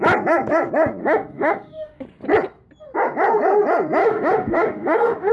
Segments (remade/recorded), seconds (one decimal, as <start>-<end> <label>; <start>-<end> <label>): 0.0-1.0 recorded; 1.0-2.0 remade; 2.0-4.0 recorded; 4.0-5.3 remade